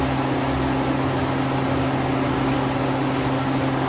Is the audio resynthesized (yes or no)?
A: no